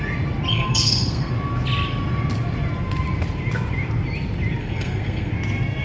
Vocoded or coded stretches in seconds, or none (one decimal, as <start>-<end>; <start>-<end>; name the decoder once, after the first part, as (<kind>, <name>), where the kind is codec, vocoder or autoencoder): 0.5-1.3 (codec, SNAC); 4.6-5.3